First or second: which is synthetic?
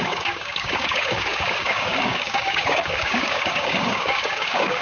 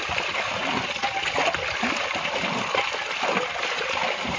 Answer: first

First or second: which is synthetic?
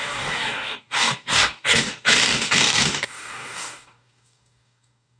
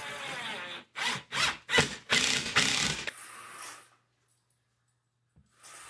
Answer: first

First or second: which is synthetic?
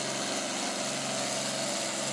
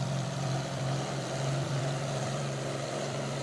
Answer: second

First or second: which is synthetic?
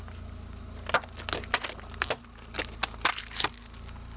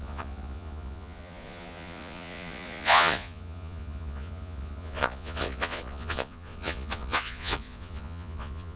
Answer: second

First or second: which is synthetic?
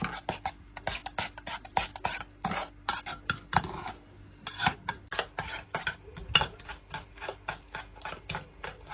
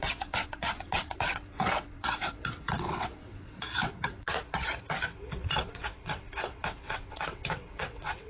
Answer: second